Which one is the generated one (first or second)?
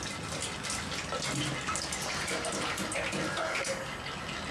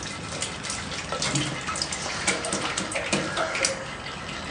second